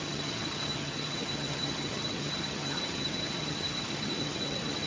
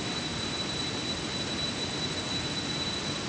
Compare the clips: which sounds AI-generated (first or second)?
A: first